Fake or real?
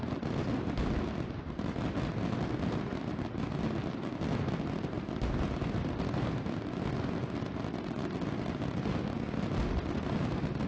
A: real